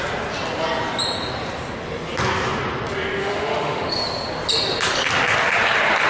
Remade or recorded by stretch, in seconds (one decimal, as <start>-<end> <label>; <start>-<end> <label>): 0.0-3.2 recorded; 3.2-3.9 remade; 3.9-6.1 recorded